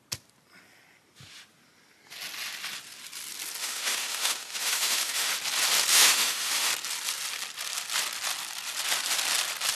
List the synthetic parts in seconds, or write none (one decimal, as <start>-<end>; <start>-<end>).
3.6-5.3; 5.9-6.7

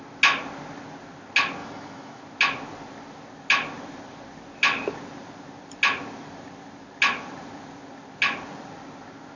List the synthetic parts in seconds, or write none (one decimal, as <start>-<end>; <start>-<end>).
1.6-2.2

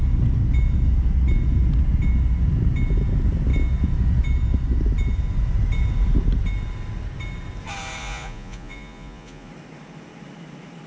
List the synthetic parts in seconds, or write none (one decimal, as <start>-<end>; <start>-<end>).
8.0-9.5

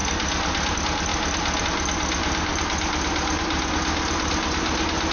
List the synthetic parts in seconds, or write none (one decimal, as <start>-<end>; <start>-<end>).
none